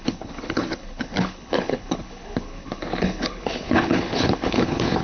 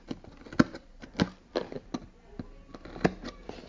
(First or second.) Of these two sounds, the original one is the second